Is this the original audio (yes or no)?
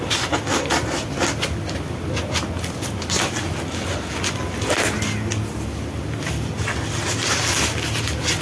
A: yes